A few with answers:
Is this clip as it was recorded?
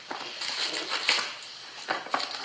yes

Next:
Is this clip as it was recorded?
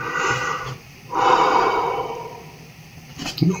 yes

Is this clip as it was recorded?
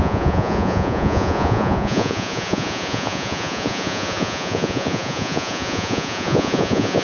no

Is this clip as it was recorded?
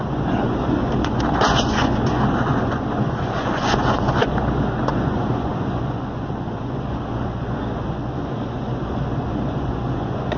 no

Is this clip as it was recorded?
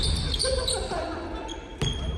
yes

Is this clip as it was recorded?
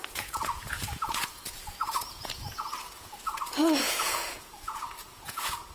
no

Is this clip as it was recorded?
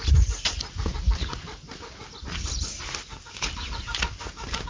yes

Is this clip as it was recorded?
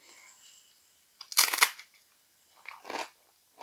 yes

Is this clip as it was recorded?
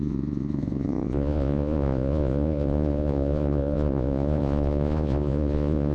no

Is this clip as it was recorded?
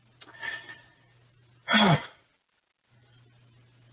yes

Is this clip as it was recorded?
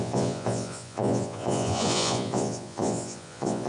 no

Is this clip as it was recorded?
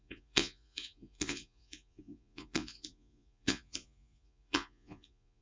no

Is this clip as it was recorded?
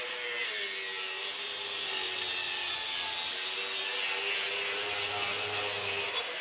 yes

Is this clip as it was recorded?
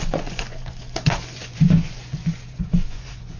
no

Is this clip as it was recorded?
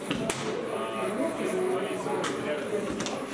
yes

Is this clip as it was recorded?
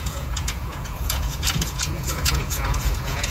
no